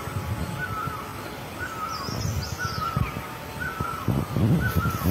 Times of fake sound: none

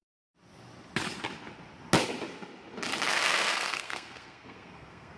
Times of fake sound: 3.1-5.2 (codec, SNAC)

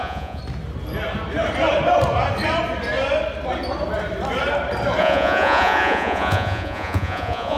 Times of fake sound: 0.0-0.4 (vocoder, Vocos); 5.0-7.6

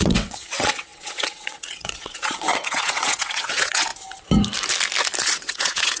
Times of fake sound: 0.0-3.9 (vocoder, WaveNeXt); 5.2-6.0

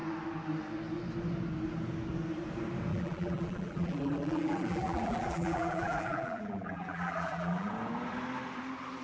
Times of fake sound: 2.9-7.7 (vocoder, BigVGAN v2)